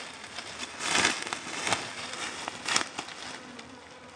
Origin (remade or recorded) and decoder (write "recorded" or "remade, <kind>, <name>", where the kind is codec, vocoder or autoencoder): recorded